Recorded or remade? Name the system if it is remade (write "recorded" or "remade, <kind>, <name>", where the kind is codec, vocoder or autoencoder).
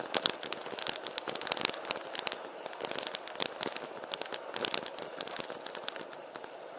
recorded